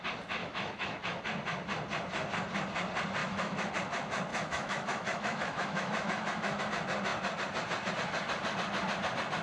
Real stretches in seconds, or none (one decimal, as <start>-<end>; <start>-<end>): 0.0-0.4; 1.2-3.2; 3.7-4.3; 6.6-9.4